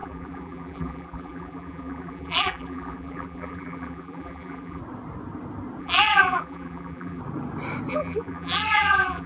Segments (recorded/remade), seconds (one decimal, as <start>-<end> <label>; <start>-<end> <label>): 0.0-4.8 remade; 4.8-5.8 recorded; 5.8-7.2 remade; 7.2-7.9 recorded; 7.9-9.3 remade

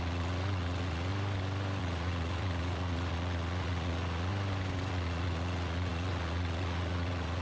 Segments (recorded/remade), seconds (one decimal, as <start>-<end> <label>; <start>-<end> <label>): 0.0-1.1 remade; 1.1-1.8 recorded; 1.8-4.3 remade; 4.3-4.9 recorded; 4.9-7.4 remade

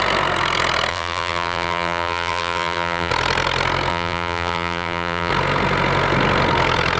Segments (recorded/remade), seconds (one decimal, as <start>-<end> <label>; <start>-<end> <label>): 0.0-0.9 recorded; 0.9-3.1 remade; 3.1-3.9 recorded; 3.9-5.3 remade; 5.3-7.0 recorded

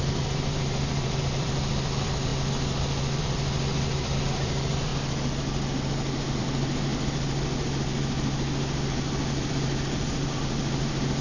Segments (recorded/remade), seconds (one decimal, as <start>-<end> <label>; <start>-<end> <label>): 0.0-2.3 remade; 2.3-3.2 recorded; 3.2-4.9 remade; 4.9-6.4 recorded; 6.4-6.9 remade; 6.9-9.5 recorded; 9.5-11.2 remade

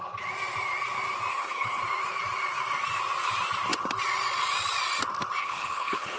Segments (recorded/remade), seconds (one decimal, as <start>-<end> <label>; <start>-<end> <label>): 0.0-1.3 recorded; 1.3-1.8 remade; 1.8-5.4 recorded; 5.4-6.2 remade

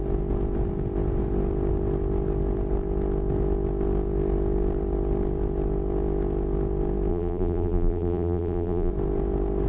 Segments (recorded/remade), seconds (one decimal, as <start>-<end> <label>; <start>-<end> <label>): 0.0-7.1 recorded; 7.1-8.9 remade; 8.9-9.7 recorded